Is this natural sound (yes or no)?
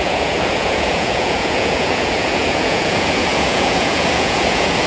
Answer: no